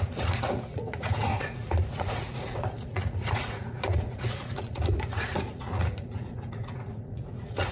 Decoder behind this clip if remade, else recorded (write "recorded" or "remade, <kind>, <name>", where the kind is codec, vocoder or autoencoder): remade, vocoder, Vocos